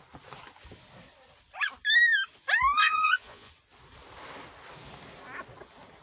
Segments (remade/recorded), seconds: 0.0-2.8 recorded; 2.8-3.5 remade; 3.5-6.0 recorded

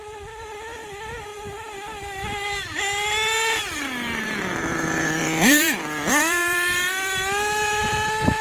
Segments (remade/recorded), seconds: 0.0-5.2 recorded; 5.2-6.9 remade; 6.9-8.4 recorded

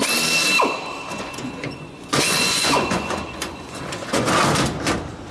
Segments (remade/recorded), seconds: 0.0-1.1 recorded; 1.1-4.3 remade; 4.3-5.3 recorded

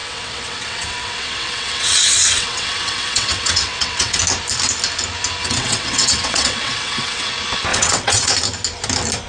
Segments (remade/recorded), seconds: 0.0-4.2 remade; 4.2-5.4 recorded; 5.4-7.3 remade; 7.3-7.7 recorded; 7.7-8.3 remade; 8.3-9.3 recorded

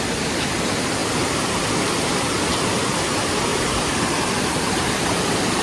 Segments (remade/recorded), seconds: 0.0-1.0 recorded; 1.0-1.9 remade; 1.9-5.6 recorded